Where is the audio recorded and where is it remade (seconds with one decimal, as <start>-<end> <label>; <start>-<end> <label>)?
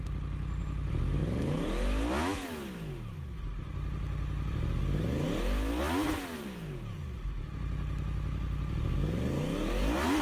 0.0-10.2 recorded